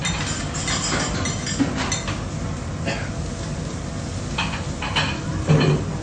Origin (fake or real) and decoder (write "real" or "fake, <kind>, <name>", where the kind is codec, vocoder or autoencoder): real